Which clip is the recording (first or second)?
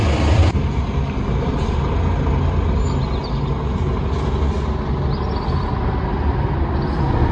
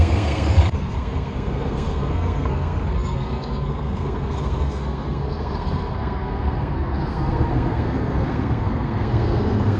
first